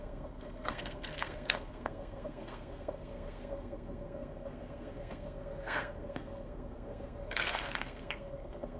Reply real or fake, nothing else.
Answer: fake